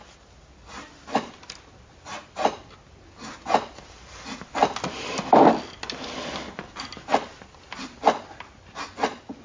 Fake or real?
real